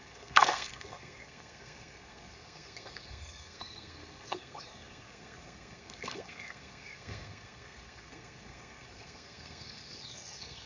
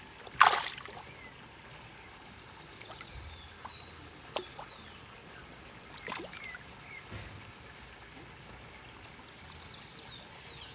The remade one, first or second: first